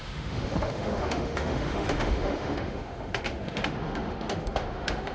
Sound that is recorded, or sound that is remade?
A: remade